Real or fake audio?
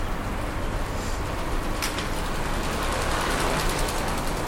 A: real